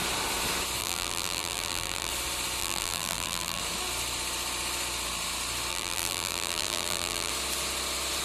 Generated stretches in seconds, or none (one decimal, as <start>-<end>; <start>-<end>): 0.8-2.1; 2.6-3.6; 5.7-7.3